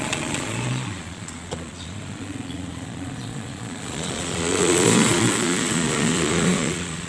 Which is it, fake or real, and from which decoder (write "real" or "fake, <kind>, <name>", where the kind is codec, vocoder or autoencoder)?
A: fake, vocoder, Vocos